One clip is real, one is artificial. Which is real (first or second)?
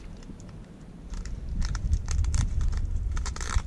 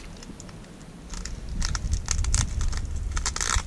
second